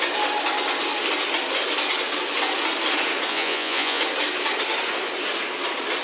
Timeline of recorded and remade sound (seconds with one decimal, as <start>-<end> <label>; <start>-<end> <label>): 0.0-3.3 recorded; 3.3-4.0 remade; 4.0-6.0 recorded